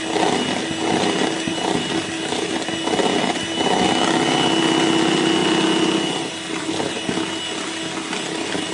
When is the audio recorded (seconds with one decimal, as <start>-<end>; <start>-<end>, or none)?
0.0-8.7